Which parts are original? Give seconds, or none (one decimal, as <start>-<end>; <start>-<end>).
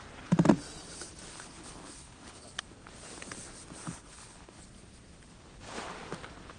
0.0-1.3; 2.4-3.8; 4.6-6.6